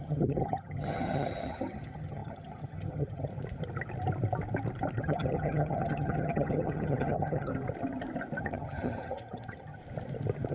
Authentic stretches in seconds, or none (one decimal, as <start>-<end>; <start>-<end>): 3.3-5.0; 7.5-8.4; 9.8-10.5